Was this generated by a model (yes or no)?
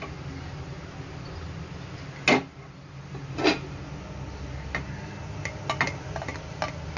no